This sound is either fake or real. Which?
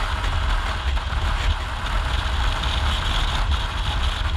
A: real